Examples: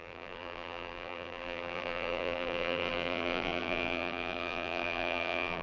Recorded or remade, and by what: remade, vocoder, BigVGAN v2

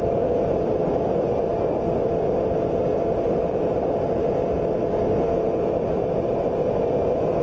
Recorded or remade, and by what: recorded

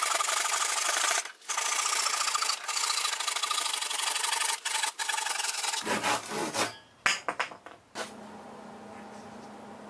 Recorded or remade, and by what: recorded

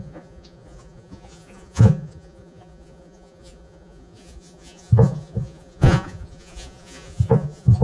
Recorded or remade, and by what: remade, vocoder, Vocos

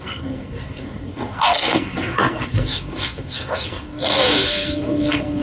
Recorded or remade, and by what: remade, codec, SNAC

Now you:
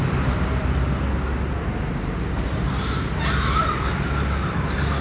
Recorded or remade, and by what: recorded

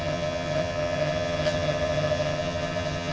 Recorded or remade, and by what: remade, vocoder, HiFi-GAN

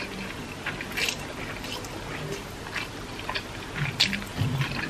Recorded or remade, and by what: recorded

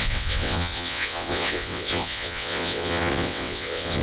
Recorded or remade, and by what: remade, vocoder, WaveNeXt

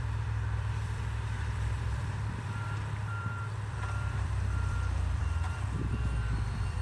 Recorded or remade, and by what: remade, vocoder, BigVGAN v2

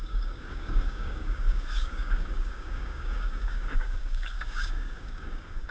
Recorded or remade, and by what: remade, codec, DAC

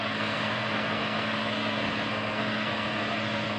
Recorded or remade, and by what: remade, codec, SNAC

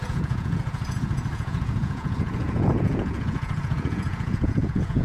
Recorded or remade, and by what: remade, vocoder, Vocos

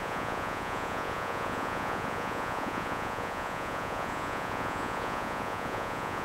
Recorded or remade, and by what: remade, vocoder, Vocos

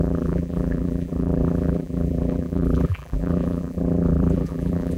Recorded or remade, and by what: remade, vocoder, BigVGAN v2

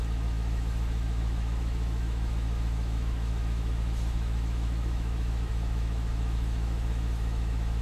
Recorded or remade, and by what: remade, autoencoder, DAC-VAE